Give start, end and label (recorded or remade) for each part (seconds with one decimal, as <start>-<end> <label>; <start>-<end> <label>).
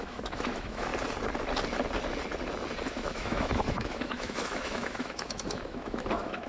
0.0-0.9 remade; 0.9-2.9 recorded; 2.9-6.5 remade